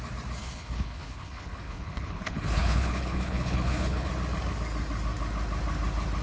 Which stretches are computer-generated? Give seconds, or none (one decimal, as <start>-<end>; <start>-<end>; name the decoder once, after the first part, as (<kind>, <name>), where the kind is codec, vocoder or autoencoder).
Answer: 0.4-4.1 (codec, HILCodec)